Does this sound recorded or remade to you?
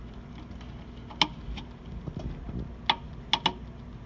recorded